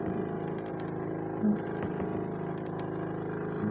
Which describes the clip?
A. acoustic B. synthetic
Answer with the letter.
A